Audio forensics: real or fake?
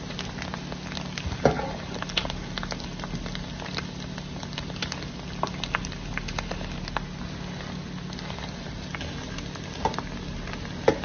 real